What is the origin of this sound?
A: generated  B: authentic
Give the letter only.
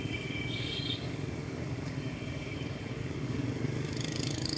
A